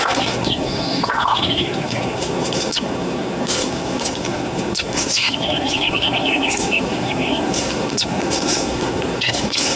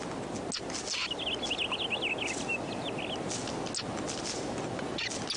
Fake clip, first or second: first